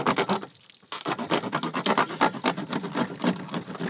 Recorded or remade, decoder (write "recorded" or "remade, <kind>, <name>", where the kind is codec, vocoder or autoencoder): recorded